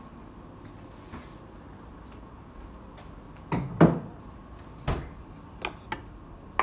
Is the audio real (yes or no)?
yes